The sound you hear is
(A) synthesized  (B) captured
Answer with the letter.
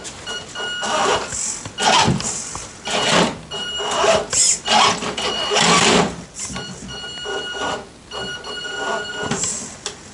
B